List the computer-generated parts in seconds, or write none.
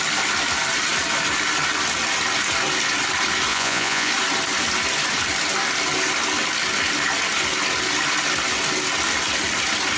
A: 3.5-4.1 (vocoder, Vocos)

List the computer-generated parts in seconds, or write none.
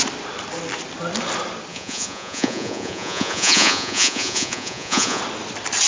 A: 1.7-5.2 (vocoder, Vocos)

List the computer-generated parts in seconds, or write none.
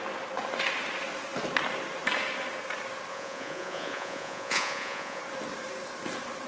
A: 3.1-5.2 (vocoder, Vocos)